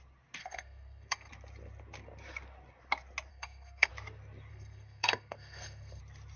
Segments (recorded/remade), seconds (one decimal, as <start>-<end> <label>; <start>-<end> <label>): 0.0-0.4 recorded; 0.4-1.3 remade; 1.3-3.3 recorded; 3.3-3.9 remade; 3.9-4.5 recorded; 4.5-6.0 remade; 6.0-6.4 recorded